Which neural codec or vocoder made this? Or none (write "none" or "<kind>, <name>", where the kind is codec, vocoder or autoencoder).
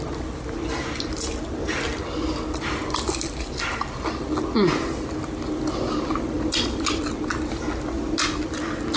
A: none